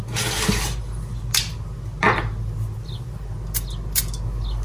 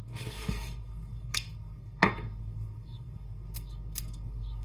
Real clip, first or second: first